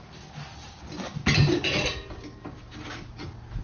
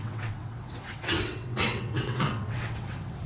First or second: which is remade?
second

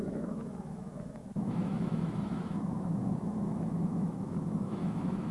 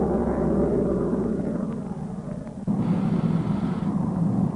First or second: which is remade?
first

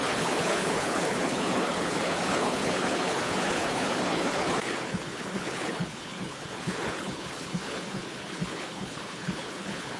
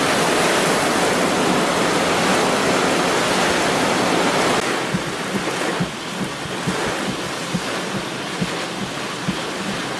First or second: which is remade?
first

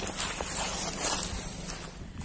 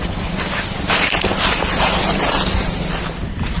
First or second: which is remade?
first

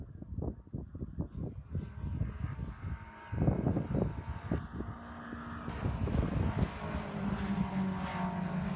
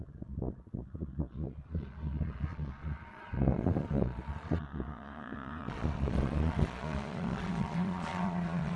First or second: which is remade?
second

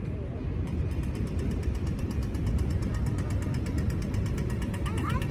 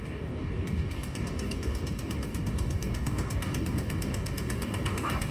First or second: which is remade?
second